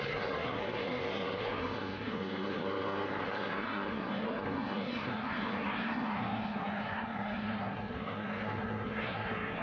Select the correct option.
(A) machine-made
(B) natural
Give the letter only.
A